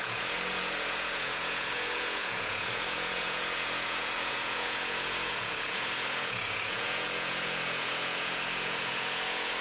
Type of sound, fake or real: fake